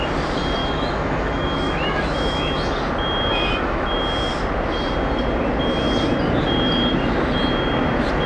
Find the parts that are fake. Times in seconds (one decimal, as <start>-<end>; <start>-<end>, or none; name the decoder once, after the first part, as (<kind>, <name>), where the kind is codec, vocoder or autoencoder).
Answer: 0.6-2.7 (autoencoder, DAC-VAE); 3.3-3.9